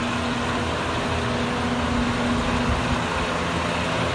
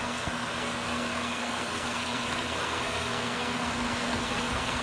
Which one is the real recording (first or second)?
first